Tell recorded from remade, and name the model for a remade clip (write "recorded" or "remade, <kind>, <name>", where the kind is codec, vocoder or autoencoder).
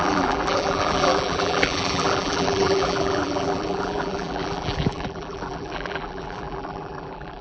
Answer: remade, vocoder, BigVGAN v2